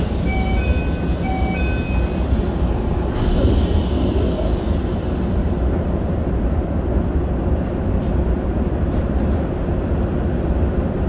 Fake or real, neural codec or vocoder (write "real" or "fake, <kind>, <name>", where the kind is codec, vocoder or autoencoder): real